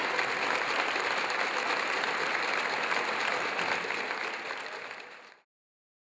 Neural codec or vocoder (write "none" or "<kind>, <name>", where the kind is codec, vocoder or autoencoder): none